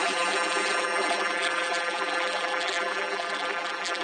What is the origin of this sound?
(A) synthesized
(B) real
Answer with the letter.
A